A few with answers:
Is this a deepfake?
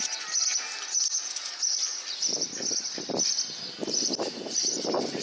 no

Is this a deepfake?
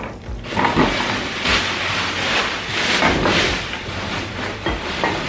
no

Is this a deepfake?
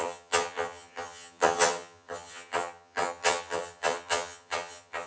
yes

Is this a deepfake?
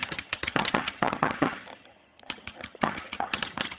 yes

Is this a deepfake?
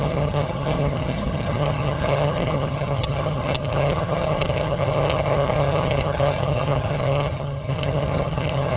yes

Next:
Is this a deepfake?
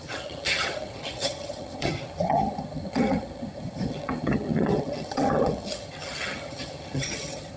yes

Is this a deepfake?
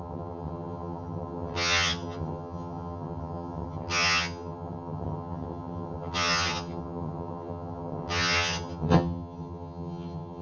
yes